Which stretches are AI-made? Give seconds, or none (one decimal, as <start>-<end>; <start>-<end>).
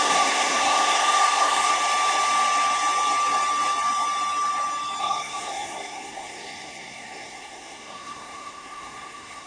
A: 0.0-1.7; 5.0-9.5